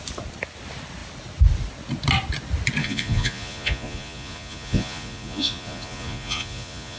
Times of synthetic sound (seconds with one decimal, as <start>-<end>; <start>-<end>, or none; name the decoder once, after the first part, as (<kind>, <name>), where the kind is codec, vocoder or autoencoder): 2.8-7.0 (vocoder, Vocos)